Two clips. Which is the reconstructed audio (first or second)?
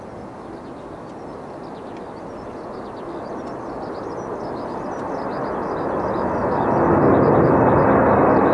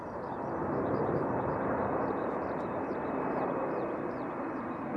second